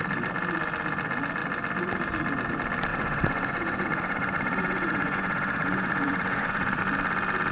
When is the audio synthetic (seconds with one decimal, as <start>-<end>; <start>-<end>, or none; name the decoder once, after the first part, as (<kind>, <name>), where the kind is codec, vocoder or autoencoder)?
2.9-6.8 (vocoder, Vocos)